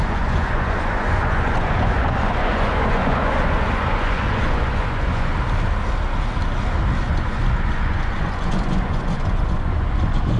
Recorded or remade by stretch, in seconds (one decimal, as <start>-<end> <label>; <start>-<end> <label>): 0.0-5.3 remade; 5.3-7.0 recorded; 7.0-10.4 remade

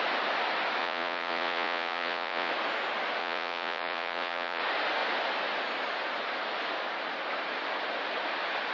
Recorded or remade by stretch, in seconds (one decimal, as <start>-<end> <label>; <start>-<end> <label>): 0.0-0.8 recorded; 0.8-2.5 remade; 2.5-3.2 recorded; 3.2-4.6 remade; 4.6-8.7 recorded

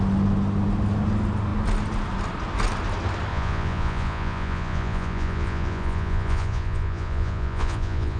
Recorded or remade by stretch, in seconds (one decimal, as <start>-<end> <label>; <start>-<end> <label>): 0.0-3.3 recorded; 3.3-8.2 remade

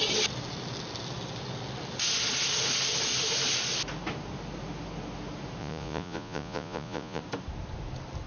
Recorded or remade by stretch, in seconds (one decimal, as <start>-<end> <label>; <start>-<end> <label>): 0.0-5.6 recorded; 5.6-7.2 remade; 7.2-8.3 recorded

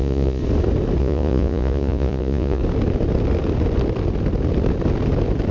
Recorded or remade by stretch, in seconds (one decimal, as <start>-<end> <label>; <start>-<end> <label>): 0.0-0.4 remade; 0.4-1.0 recorded; 1.0-2.6 remade; 2.6-5.5 recorded

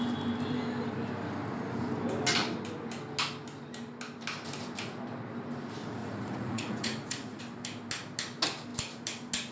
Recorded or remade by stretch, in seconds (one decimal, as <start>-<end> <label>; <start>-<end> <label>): 0.0-6.0 recorded; 6.0-7.4 remade; 7.4-9.5 recorded

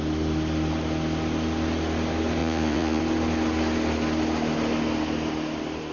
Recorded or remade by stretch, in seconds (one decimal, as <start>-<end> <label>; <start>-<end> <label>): 0.0-2.4 recorded; 2.4-3.0 remade; 3.0-5.9 recorded

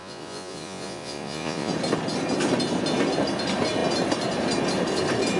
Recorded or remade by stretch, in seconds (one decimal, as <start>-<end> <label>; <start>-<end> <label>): 0.0-1.7 remade; 1.7-5.4 recorded